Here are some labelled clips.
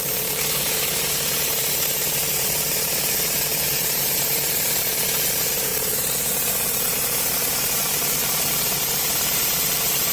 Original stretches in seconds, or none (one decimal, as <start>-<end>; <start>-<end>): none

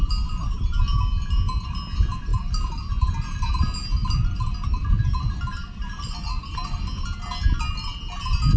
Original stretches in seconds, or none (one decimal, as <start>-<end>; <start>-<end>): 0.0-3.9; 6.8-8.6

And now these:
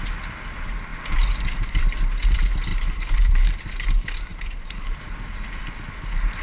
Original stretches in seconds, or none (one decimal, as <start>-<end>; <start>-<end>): 0.0-0.9; 1.7-2.7; 3.4-4.3; 5.0-6.4

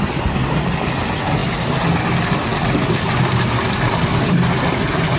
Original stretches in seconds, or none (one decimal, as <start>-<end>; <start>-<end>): 0.0-5.2